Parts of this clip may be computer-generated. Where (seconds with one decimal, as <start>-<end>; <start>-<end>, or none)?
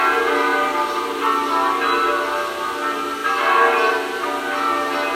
none